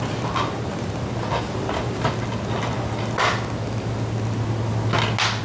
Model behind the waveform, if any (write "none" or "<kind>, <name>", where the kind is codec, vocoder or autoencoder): none